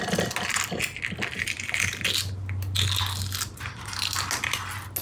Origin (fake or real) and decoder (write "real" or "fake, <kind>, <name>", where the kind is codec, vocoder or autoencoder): real